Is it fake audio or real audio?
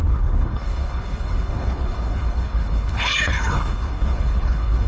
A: fake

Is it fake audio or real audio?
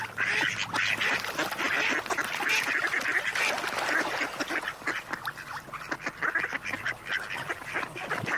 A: real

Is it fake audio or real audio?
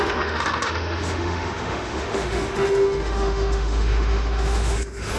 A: fake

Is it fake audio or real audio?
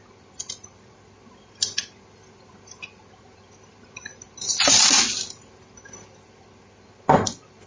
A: real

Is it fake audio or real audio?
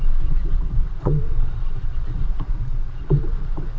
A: fake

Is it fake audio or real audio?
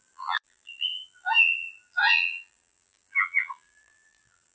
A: fake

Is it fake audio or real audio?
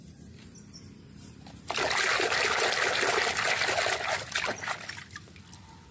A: fake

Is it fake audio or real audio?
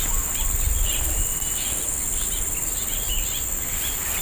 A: real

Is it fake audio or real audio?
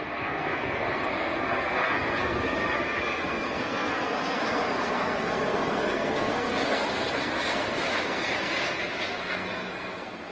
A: fake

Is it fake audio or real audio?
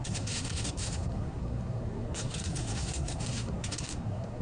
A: fake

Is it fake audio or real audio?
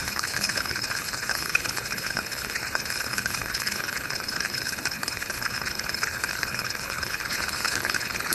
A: fake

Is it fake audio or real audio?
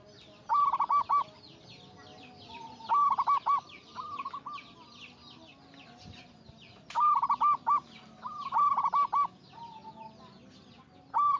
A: real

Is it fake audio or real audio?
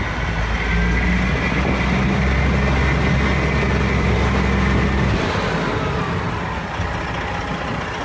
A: real